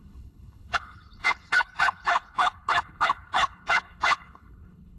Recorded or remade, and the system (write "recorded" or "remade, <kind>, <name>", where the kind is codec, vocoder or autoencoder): remade, codec, HILCodec